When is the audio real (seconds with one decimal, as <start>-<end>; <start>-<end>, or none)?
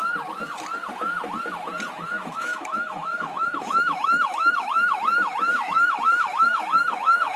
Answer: 0.0-1.9